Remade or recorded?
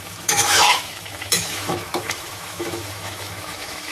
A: remade